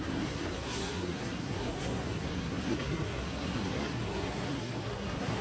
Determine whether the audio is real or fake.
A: fake